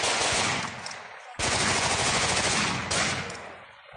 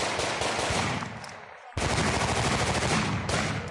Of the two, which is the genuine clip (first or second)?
second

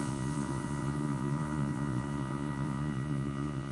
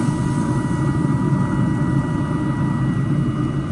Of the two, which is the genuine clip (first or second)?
second